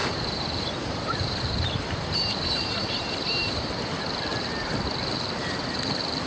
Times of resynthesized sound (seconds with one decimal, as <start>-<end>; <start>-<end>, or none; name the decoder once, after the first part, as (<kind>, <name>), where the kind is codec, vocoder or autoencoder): 0.0-3.8 (vocoder, BigVGAN v2)